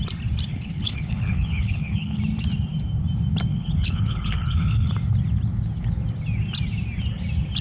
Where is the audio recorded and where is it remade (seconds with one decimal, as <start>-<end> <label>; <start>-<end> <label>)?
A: 0.0-0.5 recorded; 0.5-2.2 remade; 2.2-3.5 recorded; 3.5-4.9 remade; 4.9-7.6 recorded